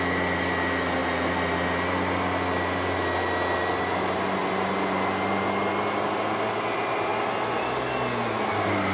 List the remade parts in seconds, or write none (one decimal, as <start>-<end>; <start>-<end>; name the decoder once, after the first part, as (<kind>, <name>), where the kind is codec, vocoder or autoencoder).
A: none